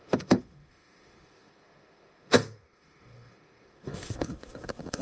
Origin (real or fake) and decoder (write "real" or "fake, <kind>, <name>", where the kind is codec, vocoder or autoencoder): fake, autoencoder, DAC-VAE